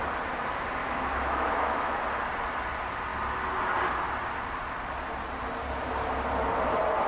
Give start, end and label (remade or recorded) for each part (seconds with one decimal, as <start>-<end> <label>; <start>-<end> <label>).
0.0-0.8 recorded; 0.8-2.0 remade; 2.0-7.1 recorded